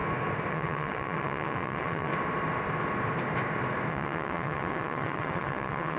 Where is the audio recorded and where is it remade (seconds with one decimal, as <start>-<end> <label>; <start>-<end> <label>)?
0.0-0.5 recorded; 0.5-2.1 remade; 2.1-3.9 recorded; 3.9-6.0 remade